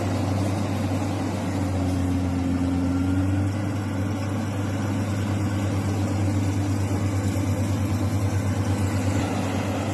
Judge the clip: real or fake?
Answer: real